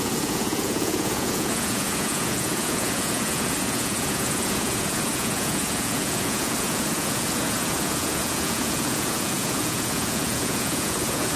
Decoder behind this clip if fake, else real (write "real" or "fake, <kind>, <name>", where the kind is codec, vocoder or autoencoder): fake, vocoder, Vocos